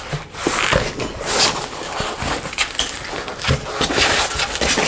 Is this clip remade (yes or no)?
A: no